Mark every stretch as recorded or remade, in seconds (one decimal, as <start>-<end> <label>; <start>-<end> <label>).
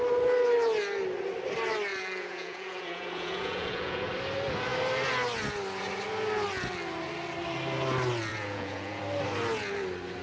0.0-1.9 recorded; 1.9-4.1 remade; 4.1-8.3 recorded; 8.3-9.0 remade; 9.0-10.2 recorded